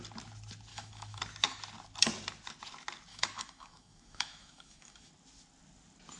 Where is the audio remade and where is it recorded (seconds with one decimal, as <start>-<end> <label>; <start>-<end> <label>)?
0.0-0.7 recorded; 0.7-1.2 remade; 1.2-3.1 recorded; 3.1-5.1 remade; 5.1-6.2 recorded